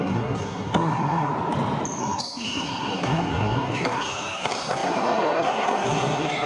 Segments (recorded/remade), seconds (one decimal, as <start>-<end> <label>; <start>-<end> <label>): 0.0-1.3 remade; 1.3-2.0 recorded; 2.0-6.5 remade